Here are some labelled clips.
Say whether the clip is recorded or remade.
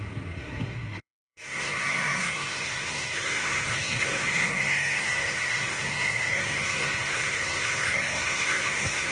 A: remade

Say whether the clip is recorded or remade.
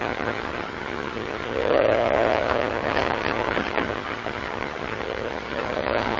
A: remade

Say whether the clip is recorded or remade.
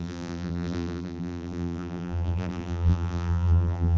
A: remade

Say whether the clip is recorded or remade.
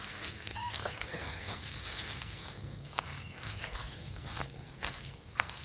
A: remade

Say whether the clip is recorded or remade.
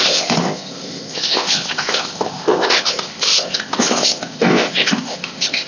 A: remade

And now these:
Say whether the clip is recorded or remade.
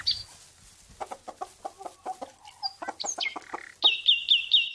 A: recorded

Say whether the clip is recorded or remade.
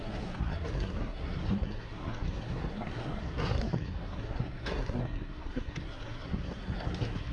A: remade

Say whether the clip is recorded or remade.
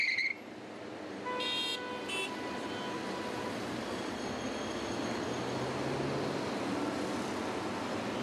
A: recorded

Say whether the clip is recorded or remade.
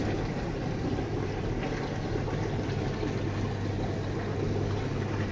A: recorded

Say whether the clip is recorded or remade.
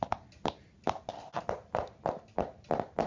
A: recorded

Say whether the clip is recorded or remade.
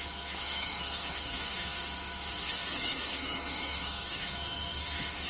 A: remade